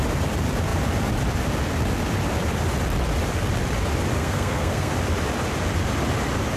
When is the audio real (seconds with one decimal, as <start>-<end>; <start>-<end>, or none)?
0.0-4.2; 4.9-6.6